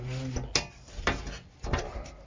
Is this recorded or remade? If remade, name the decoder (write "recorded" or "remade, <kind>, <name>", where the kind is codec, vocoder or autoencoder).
recorded